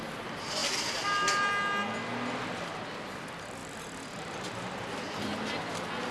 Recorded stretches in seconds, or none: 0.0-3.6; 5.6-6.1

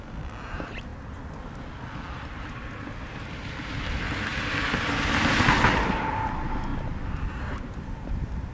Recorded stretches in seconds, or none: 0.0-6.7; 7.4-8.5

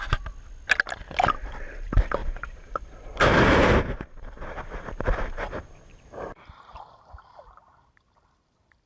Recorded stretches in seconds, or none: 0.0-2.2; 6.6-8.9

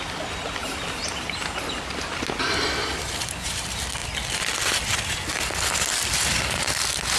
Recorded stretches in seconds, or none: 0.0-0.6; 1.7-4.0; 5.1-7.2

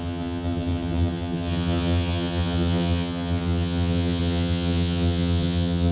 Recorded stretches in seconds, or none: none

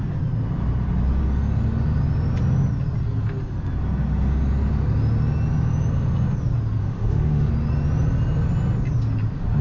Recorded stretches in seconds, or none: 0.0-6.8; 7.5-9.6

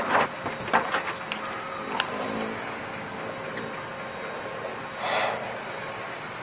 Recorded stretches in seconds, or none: 0.0-6.4